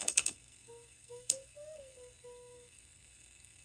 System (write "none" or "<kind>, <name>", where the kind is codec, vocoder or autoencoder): codec, SNAC